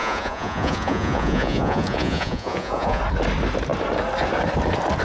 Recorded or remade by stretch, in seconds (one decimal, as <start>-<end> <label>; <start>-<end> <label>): 0.0-3.0 remade; 3.0-5.0 recorded